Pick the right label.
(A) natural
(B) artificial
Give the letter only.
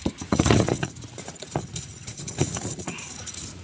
B